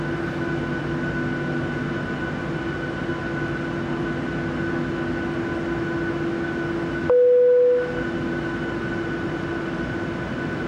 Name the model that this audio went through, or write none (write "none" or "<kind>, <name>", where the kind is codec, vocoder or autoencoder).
none